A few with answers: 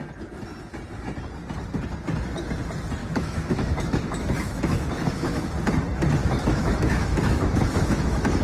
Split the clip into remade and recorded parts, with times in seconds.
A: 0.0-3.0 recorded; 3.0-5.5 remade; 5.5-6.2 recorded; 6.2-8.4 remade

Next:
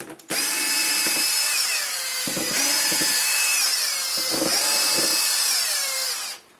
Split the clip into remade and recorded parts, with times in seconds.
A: 0.0-3.7 remade; 3.7-4.3 recorded; 4.3-6.6 remade

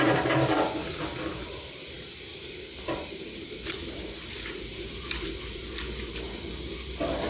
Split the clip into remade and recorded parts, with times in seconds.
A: 0.0-0.8 remade; 0.8-1.4 recorded; 1.4-7.3 remade

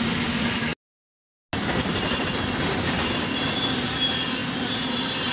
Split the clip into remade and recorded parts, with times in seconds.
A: 0.0-5.3 recorded

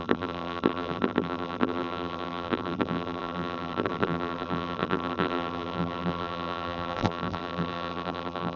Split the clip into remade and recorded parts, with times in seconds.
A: 0.0-8.6 remade